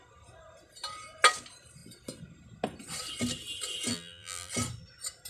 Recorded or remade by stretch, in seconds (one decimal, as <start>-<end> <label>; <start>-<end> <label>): 0.0-3.9 recorded; 3.9-4.5 remade; 4.5-5.3 recorded